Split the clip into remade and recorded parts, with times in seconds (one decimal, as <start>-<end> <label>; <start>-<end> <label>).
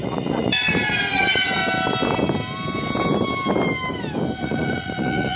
0.0-1.6 remade; 1.6-4.4 recorded; 4.4-5.4 remade